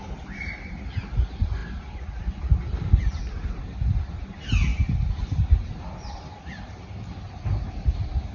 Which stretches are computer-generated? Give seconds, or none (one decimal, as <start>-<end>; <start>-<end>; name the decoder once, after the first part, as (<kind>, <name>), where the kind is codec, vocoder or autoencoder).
none